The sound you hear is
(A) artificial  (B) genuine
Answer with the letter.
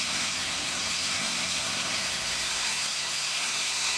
A